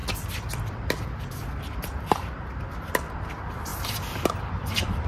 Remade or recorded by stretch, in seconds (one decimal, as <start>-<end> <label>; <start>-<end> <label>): 0.0-3.7 remade; 3.7-4.5 recorded; 4.5-5.1 remade